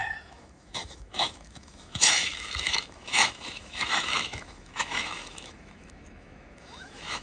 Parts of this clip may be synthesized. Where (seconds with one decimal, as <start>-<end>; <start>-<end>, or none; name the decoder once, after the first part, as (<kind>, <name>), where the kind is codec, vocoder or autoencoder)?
0.0-7.2 (autoencoder, DAC-VAE)